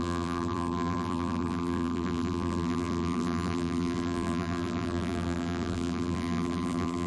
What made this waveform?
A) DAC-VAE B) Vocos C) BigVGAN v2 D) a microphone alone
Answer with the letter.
C